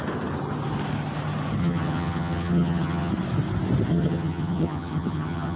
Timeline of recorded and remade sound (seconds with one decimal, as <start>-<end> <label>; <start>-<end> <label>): 0.0-1.6 recorded; 1.6-3.1 remade; 3.1-3.9 recorded; 3.9-5.6 remade